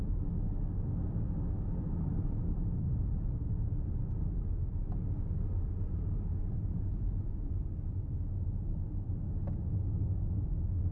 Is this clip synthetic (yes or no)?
no